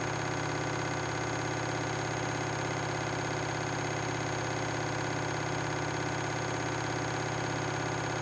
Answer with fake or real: real